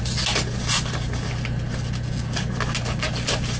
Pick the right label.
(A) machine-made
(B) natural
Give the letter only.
B